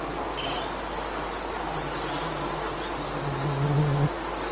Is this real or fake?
real